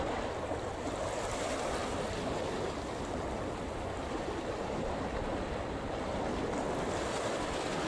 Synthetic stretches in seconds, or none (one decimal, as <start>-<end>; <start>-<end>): 1.8-5.3